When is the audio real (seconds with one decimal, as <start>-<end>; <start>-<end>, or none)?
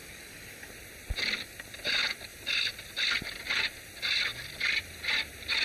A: 0.7-5.6